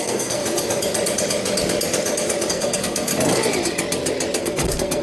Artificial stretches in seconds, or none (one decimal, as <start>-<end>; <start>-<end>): 0.0-0.4; 2.5-3.1; 4.4-5.0